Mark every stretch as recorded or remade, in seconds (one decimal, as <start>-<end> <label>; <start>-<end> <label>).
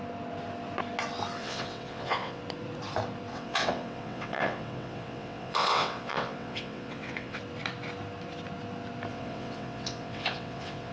0.0-1.4 recorded; 1.4-2.4 remade; 2.4-3.3 recorded; 3.3-7.4 remade; 7.4-9.1 recorded; 9.1-10.9 remade